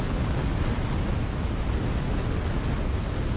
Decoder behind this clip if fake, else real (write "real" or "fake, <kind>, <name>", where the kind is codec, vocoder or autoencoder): real